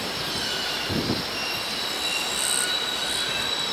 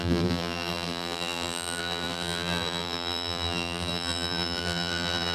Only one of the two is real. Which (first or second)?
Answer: first